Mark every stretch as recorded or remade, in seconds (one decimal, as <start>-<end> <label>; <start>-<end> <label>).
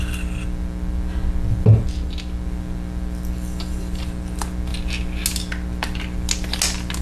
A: 0.0-7.0 recorded